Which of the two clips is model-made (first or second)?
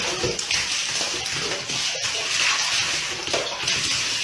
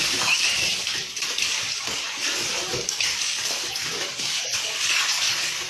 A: second